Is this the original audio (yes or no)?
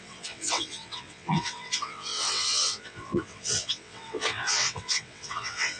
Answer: no